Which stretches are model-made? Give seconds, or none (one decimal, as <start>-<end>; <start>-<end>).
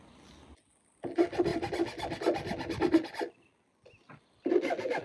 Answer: none